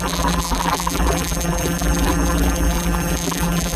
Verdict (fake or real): fake